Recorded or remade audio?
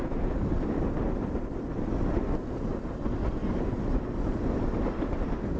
recorded